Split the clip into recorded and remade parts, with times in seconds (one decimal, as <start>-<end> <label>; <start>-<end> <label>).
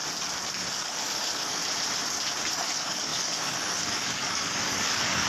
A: 0.0-0.7 recorded; 0.7-1.6 remade; 1.6-2.5 recorded; 2.5-5.3 remade